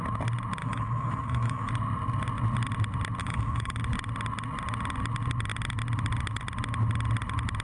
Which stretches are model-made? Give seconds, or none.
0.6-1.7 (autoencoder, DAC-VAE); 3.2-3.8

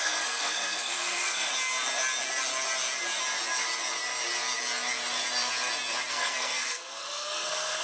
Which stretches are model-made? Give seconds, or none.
0.0-1.5 (codec, SNAC); 6.1-7.8

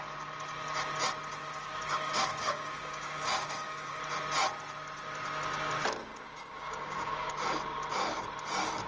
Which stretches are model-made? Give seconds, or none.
1.4-4.0 (codec, DAC); 6.0-7.3

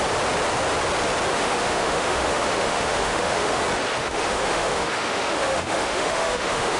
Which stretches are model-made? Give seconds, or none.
1.3-3.6 (autoencoder, DAC-VAE); 4.0-6.8

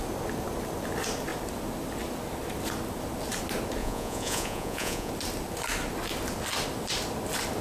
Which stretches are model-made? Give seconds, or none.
3.8-5.1 (vocoder, Vocos)

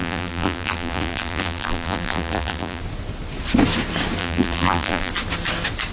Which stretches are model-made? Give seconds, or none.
0.0-2.8 (vocoder, BigVGAN v2); 4.2-5.1

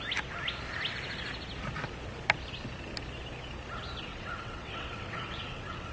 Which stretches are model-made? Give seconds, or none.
4.1-5.9 (vocoder, WaveNeXt)

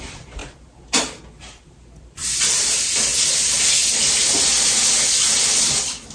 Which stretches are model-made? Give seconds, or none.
0.0-3.1 (vocoder, BigVGAN v2); 5.6-6.1